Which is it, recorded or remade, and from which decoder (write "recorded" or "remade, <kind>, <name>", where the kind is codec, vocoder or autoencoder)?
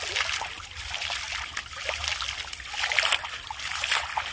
recorded